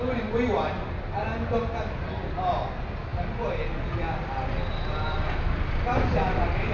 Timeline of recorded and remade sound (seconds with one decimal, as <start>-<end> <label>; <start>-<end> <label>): 0.0-6.7 recorded